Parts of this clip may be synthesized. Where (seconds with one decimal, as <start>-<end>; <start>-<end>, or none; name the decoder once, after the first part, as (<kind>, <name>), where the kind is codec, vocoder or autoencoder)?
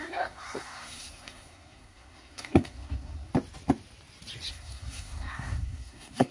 0.0-3.3 (codec, SNAC); 4.5-6.3